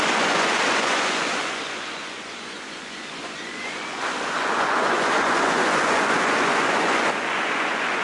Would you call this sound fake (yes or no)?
yes